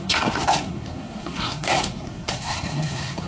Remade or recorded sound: remade